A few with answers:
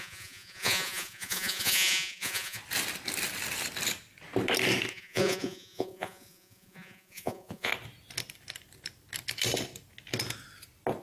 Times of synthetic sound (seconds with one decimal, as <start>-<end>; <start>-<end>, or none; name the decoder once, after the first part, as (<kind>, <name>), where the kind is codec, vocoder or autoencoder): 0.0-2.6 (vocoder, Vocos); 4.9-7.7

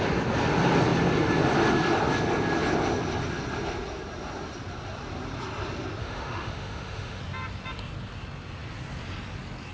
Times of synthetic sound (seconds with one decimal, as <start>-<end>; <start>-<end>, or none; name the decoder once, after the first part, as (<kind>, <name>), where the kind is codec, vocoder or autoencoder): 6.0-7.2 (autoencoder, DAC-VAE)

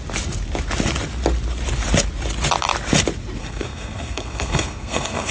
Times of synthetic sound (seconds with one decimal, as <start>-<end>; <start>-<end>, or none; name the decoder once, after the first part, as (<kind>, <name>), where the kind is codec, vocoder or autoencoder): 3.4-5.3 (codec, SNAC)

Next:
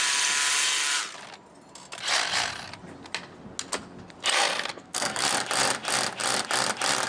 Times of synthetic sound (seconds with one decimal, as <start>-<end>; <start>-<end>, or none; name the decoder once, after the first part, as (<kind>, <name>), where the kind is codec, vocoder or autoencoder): 4.7-5.2 (codec, SNAC)

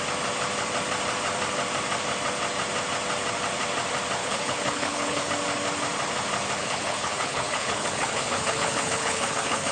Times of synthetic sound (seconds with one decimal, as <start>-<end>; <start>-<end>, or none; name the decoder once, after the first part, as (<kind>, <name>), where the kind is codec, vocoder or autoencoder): 4.2-5.3 (codec, HILCodec); 6.6-9.7